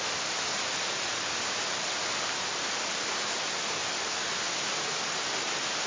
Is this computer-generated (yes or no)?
no